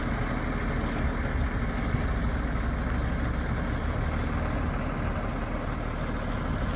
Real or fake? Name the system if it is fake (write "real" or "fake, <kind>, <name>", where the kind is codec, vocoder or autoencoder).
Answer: real